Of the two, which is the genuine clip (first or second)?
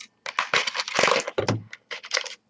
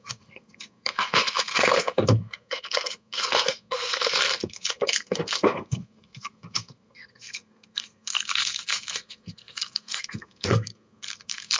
first